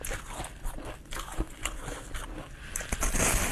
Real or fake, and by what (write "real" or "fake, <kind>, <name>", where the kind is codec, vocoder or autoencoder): real